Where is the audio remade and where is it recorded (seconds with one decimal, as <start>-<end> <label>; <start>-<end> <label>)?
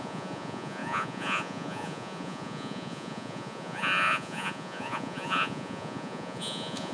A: 0.0-6.9 remade